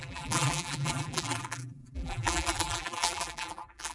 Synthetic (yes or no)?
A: yes